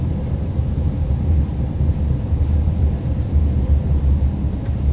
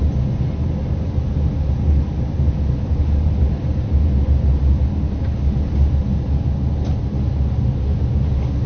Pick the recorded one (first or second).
second